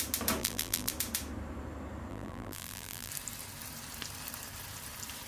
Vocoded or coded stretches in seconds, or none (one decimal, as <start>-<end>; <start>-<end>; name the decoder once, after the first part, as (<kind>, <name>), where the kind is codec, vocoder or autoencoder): 0.4-0.9 (vocoder, BigVGAN v2); 2.1-3.1